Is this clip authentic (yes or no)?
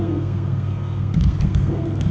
no